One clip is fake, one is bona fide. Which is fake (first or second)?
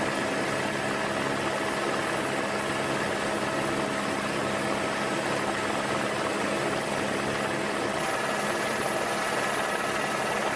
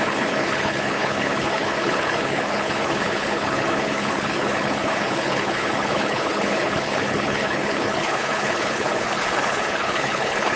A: second